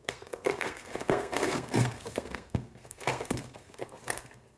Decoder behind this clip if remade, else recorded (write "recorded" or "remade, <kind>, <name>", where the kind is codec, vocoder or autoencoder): remade, codec, SNAC